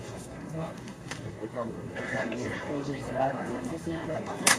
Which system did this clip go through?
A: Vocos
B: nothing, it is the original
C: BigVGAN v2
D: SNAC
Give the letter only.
D